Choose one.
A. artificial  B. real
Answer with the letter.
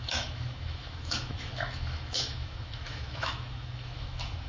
A